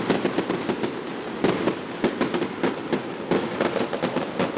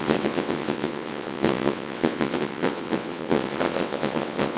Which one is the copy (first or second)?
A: second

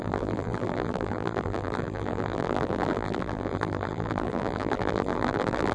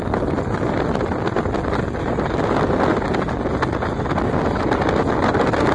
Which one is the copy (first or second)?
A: first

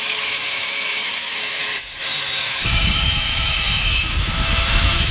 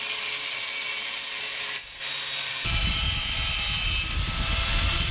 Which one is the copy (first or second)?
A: first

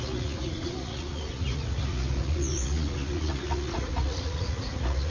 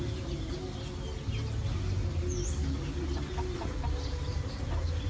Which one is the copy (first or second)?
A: first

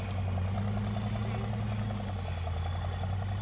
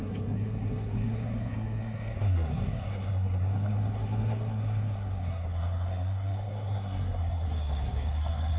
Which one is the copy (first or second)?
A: second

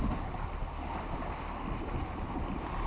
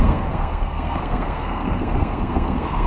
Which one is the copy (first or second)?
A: second